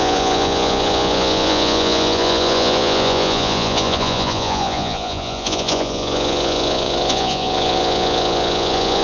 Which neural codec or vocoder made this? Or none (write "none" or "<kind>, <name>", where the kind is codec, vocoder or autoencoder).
vocoder, Vocos